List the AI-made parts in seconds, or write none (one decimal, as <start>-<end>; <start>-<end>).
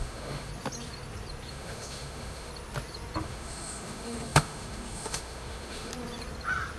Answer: 0.0-0.5; 1.5-2.5; 3.2-5.9